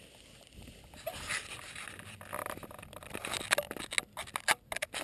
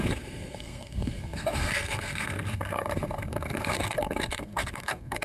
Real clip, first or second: first